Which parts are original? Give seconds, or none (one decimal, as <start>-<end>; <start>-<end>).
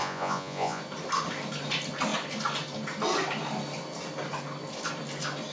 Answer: 0.8-5.5